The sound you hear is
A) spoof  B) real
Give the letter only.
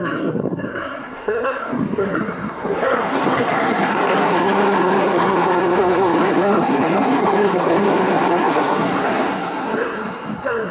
A